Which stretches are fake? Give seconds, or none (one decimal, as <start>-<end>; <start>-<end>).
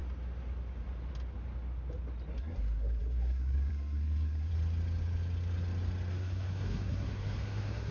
2.4-4.5; 6.1-7.9